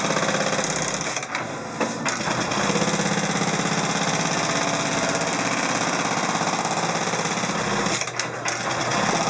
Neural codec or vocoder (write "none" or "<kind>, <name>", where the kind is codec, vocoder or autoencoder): none